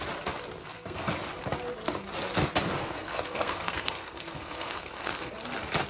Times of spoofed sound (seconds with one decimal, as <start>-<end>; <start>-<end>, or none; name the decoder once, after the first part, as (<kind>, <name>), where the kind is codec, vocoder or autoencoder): 0.6-1.1 (codec, SNAC); 2.8-5.3